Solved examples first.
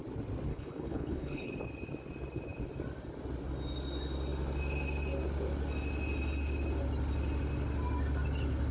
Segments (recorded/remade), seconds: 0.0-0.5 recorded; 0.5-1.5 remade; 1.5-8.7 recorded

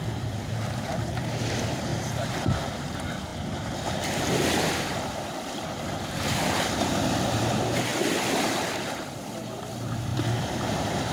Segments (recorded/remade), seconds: 0.0-1.9 remade; 1.9-2.8 recorded; 2.8-7.9 remade; 7.9-8.7 recorded; 8.7-11.1 remade